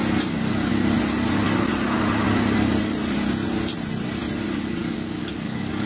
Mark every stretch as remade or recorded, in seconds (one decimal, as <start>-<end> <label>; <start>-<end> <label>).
0.0-4.8 recorded; 4.8-5.9 remade